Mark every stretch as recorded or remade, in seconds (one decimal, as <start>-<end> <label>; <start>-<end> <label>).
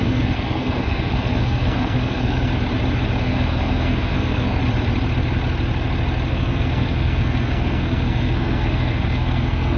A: 0.0-2.5 remade; 2.5-3.2 recorded; 3.2-4.6 remade; 4.6-6.3 recorded; 6.3-9.8 remade